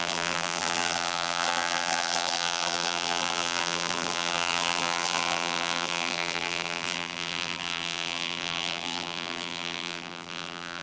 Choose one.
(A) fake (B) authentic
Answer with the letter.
A